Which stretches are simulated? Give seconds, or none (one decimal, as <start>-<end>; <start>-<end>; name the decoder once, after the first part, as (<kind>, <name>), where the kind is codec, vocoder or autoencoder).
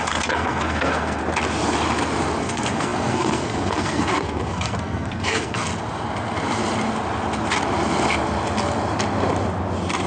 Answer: 0.0-1.2 (codec, SNAC); 2.4-5.7